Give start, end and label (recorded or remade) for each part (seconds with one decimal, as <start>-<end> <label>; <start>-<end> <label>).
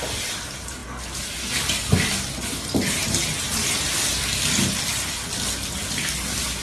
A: 0.0-6.6 recorded